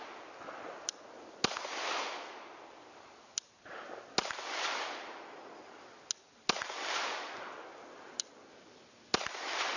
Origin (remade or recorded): recorded